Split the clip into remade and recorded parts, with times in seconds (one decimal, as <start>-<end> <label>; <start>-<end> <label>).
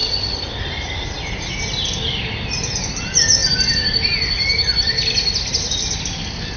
0.0-6.6 recorded